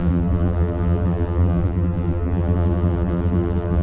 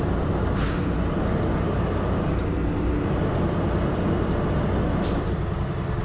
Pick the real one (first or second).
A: second